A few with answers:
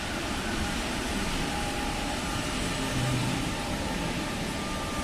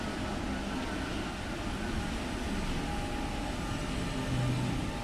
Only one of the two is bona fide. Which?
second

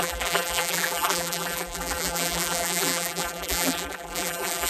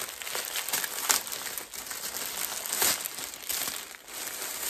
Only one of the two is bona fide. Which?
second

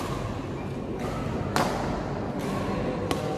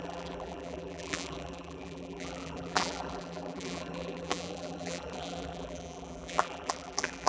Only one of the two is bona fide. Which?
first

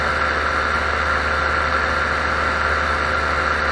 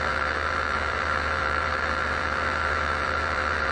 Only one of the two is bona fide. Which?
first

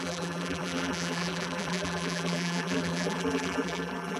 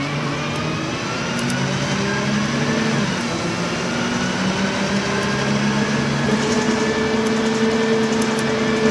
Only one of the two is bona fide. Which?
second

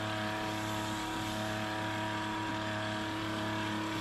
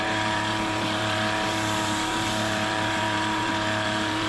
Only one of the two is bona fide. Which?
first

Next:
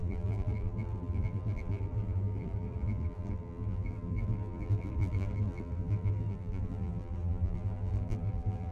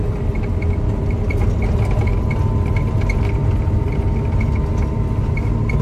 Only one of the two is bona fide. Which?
second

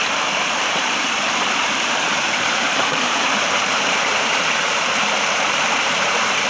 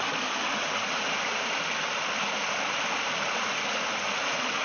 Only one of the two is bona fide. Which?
second